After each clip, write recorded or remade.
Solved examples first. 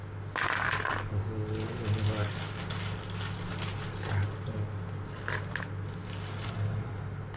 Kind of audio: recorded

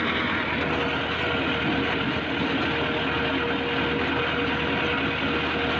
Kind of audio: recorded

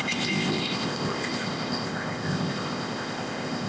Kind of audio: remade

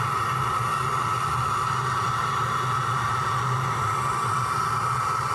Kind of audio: recorded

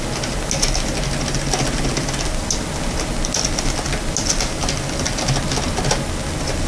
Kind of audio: recorded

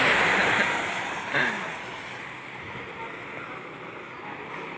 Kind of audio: recorded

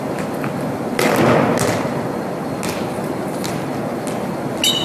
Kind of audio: recorded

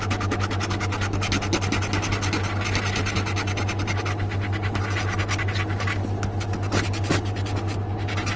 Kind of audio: recorded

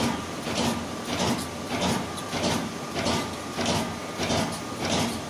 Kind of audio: recorded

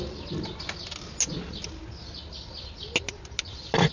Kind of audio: recorded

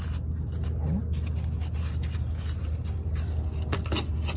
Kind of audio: recorded